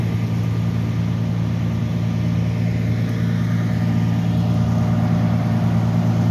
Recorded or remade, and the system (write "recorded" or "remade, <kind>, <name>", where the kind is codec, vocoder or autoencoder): recorded